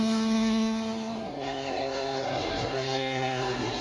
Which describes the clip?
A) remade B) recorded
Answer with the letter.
A